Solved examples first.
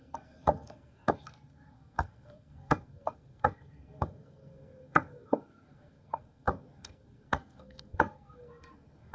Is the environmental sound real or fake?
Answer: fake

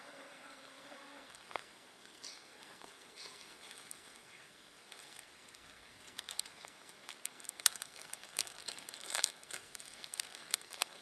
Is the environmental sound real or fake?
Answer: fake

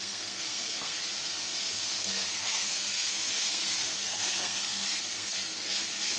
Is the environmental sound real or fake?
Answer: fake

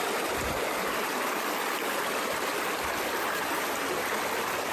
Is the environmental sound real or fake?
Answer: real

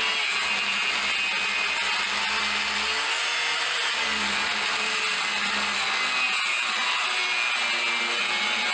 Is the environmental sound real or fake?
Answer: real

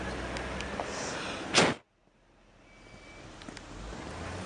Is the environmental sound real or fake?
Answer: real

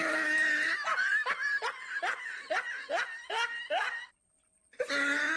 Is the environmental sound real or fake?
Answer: real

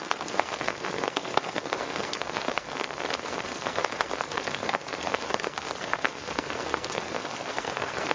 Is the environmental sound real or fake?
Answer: fake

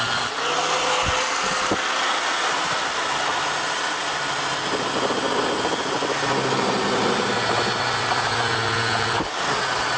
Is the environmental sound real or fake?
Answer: real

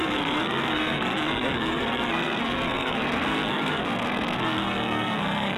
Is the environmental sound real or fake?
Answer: fake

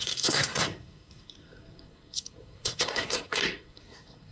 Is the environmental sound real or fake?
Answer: fake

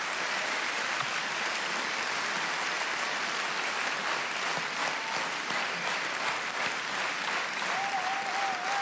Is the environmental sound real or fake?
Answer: real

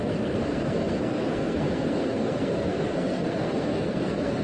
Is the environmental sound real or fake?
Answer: fake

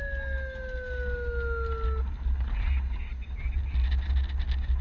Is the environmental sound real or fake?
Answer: real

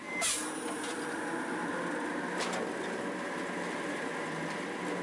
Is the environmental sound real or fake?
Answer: real